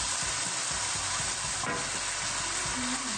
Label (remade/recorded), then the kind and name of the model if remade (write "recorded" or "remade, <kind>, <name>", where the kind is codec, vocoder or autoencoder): recorded